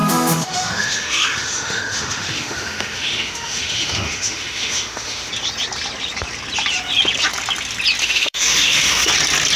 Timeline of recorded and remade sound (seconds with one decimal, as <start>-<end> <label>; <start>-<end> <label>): 0.0-5.3 remade; 5.3-8.0 recorded; 8.0-9.1 remade; 9.1-9.6 recorded